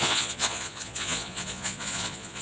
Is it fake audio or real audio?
fake